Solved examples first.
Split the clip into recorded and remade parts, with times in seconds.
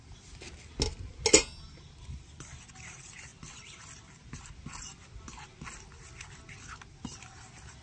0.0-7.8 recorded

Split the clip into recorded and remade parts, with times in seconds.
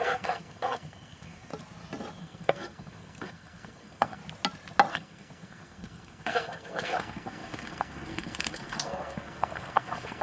0.0-1.5 remade; 1.5-2.2 recorded; 2.2-4.2 remade; 4.2-4.9 recorded; 4.9-10.2 remade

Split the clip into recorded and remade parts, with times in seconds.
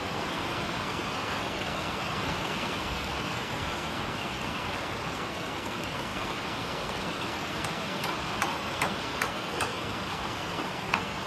0.0-11.3 remade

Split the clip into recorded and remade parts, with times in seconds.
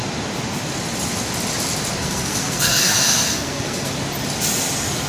0.0-2.0 recorded; 2.0-3.9 remade; 3.9-5.1 recorded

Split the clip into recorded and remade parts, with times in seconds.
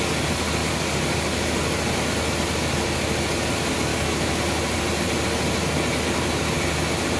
0.0-3.9 recorded; 3.9-4.4 remade; 4.4-7.2 recorded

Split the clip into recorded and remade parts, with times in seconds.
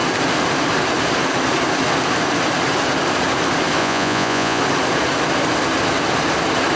0.0-3.8 recorded; 3.8-4.6 remade; 4.6-6.8 recorded